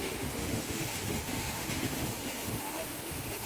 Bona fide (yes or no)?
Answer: no